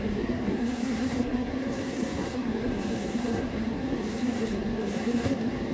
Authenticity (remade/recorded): remade